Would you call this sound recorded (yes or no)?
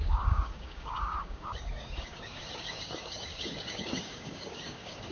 no